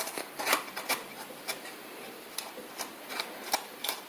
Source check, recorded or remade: recorded